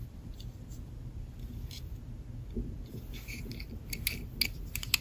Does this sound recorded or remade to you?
recorded